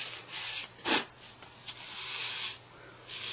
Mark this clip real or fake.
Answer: real